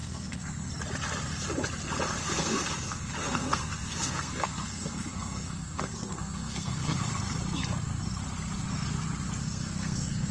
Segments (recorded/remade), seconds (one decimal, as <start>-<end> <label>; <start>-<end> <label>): 0.0-0.7 remade; 0.7-2.2 recorded; 2.2-7.0 remade; 7.0-9.4 recorded; 9.4-10.3 remade

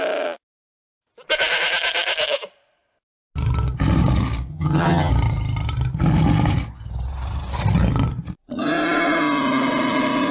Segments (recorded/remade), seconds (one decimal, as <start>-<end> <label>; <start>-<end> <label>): 0.0-4.5 recorded; 4.5-5.1 remade; 5.1-10.3 recorded

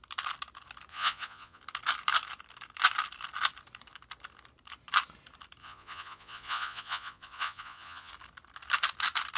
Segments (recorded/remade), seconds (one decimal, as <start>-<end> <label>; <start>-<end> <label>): 0.0-0.9 recorded; 0.9-1.6 remade; 1.6-5.6 recorded; 5.6-8.1 remade; 8.1-9.4 recorded

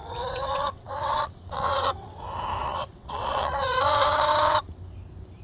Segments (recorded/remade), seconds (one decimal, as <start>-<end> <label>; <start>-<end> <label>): 0.0-2.2 remade; 2.2-2.6 recorded; 2.6-4.6 remade; 4.6-5.4 recorded

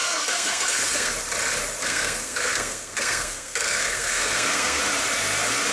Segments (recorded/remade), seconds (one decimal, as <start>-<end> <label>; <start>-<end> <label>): 0.0-1.1 remade; 1.1-1.8 recorded; 1.8-4.8 remade; 4.8-5.7 recorded

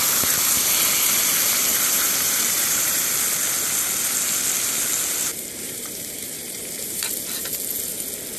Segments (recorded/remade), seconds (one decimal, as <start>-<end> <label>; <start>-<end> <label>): 0.0-1.7 recorded; 1.7-3.1 remade; 3.1-5.3 recorded; 5.3-7.2 remade; 7.2-8.4 recorded